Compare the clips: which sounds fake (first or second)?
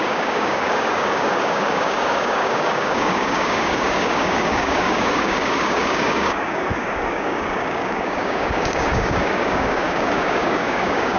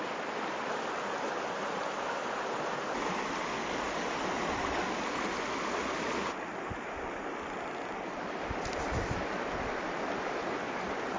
first